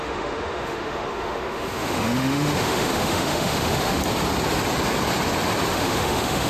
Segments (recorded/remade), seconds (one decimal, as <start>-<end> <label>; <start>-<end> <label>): 0.0-4.0 remade; 4.0-5.7 recorded; 5.7-6.5 remade